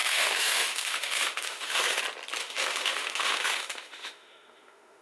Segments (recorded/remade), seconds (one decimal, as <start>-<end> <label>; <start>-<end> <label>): 0.0-2.0 remade; 2.0-2.4 recorded; 2.4-5.0 remade